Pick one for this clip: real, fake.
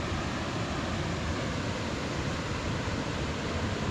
fake